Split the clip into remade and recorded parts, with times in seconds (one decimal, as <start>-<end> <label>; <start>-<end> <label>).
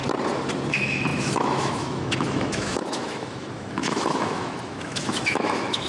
0.0-0.7 recorded; 0.7-5.9 remade